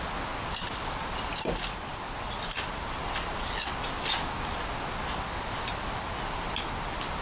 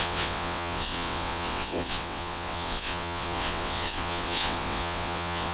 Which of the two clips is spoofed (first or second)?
second